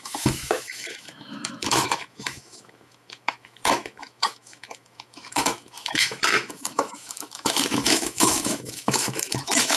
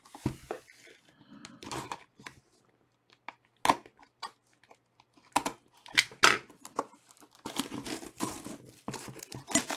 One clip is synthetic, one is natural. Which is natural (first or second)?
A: second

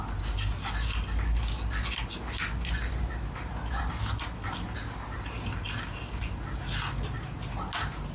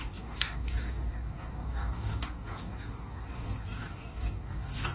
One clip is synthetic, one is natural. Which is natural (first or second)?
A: first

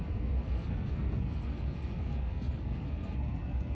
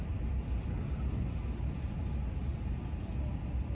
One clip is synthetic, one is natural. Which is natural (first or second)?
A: second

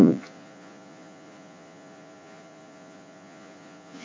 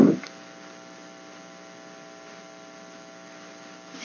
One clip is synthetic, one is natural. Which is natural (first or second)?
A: second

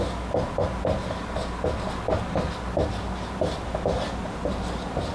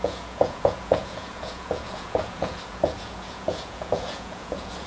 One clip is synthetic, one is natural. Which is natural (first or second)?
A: first